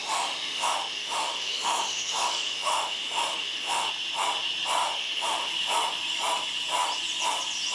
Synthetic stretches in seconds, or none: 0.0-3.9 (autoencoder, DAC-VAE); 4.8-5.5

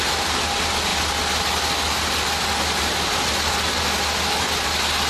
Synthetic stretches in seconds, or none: none

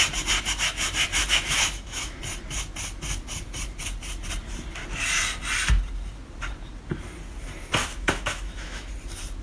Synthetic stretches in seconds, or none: 1.2-2.2 (autoencoder, DAC-VAE); 7.8-8.9

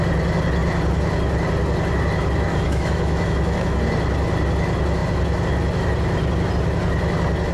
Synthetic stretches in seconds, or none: 2.5-3.8 (autoencoder, DAC-VAE)

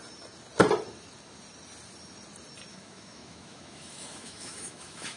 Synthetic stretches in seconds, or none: 2.7-5.2 (autoencoder, DAC-VAE)

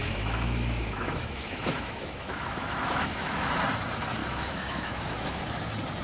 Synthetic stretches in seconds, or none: 0.0-3.6 (autoencoder, DAC-VAE); 4.2-5.4

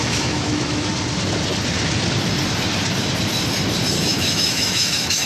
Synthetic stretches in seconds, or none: 0.0-0.9 (autoencoder, DAC-VAE); 4.0-5.3

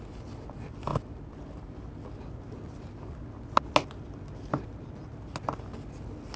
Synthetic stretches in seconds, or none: none